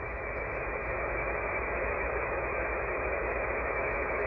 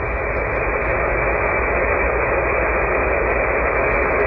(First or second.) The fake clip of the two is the first